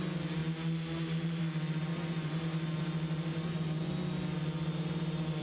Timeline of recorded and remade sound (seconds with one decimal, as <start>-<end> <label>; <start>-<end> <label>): 0.0-1.9 recorded; 1.9-2.8 remade; 2.8-3.3 recorded; 3.3-3.9 remade; 3.9-5.4 recorded